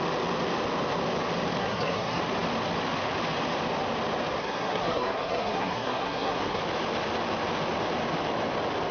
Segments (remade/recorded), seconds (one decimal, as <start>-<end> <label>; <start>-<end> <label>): 0.0-1.6 recorded; 1.6-2.2 remade; 2.2-4.4 recorded; 4.4-6.6 remade; 6.6-8.9 recorded